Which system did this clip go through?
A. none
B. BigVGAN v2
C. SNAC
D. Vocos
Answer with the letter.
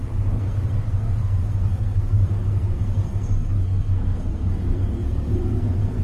C